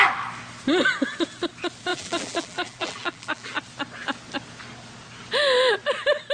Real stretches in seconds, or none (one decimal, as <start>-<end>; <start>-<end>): 0.0-1.9; 3.6-6.3